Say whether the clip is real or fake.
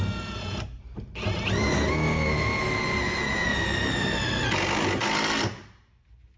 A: real